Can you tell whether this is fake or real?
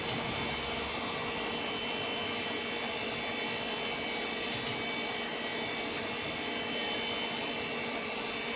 real